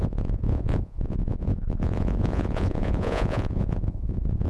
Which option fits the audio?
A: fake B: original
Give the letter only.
A